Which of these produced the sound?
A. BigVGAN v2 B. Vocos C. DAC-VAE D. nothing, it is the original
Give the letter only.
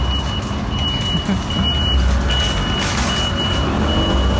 D